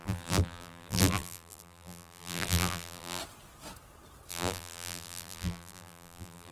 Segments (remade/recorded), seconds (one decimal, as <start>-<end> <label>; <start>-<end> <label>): 0.0-3.2 remade; 3.2-4.3 recorded; 4.3-6.5 remade